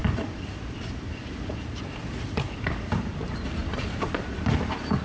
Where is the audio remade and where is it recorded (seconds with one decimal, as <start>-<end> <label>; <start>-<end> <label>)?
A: 0.0-2.0 recorded; 2.0-3.2 remade; 3.2-3.6 recorded; 3.6-4.3 remade; 4.3-5.0 recorded